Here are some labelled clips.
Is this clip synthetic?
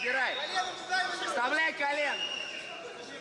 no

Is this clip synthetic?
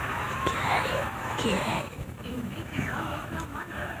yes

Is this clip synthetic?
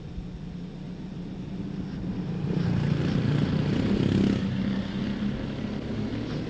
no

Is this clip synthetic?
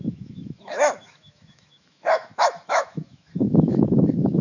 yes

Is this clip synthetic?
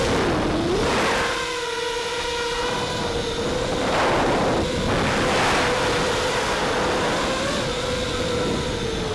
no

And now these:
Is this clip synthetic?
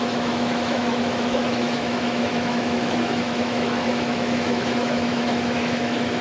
yes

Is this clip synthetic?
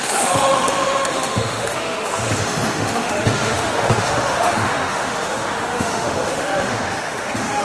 yes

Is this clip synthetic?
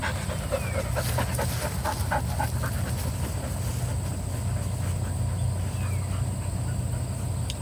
no